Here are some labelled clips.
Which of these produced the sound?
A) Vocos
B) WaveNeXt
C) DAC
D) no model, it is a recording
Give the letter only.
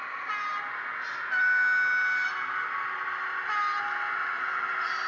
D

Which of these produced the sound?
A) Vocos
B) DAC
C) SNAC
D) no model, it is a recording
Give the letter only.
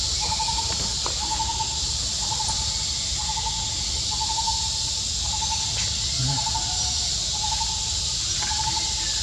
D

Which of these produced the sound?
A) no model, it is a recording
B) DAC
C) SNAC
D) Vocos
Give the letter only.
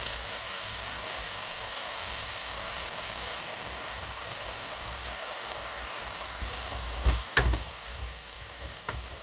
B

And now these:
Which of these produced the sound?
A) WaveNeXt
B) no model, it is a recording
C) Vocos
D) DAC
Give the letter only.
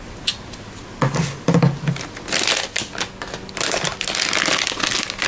B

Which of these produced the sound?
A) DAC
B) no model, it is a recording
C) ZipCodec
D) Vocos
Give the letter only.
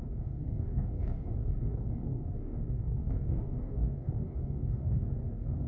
A